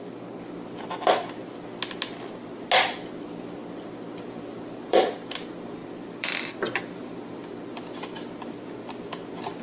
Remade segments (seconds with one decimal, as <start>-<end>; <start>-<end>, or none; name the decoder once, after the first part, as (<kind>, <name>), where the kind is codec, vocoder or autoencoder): 3.6-5.3 (vocoder, BigVGAN v2); 5.8-6.8